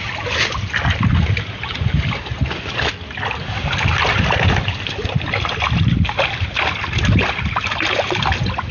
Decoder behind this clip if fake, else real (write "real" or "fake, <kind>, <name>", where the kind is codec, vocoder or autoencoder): real